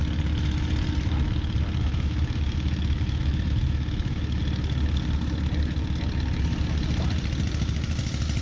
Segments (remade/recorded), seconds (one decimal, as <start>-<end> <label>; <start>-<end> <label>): 0.0-1.8 recorded; 1.8-4.4 remade; 4.4-8.4 recorded